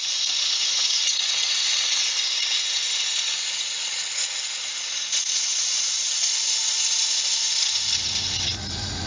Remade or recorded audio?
remade